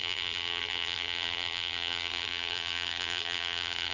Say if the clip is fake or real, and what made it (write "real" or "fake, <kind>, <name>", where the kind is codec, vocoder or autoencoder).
fake, vocoder, BigVGAN v2